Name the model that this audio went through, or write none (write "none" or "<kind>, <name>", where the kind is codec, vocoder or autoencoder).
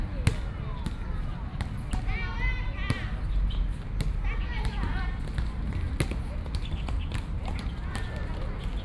none